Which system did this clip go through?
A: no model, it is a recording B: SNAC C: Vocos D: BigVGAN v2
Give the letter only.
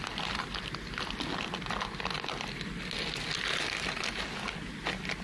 A